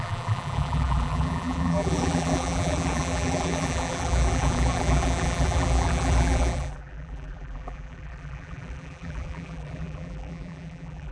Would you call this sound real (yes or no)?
no